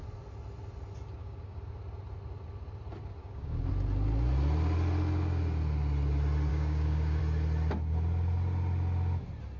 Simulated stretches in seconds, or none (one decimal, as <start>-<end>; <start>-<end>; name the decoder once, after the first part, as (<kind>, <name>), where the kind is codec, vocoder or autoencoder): 1.2-1.7 (codec, DAC); 3.2-3.7; 6.5-7.2